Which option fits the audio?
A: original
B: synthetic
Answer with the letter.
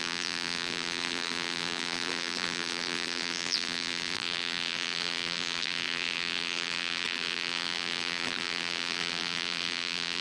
B